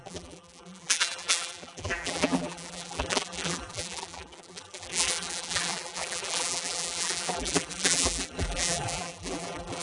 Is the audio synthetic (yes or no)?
yes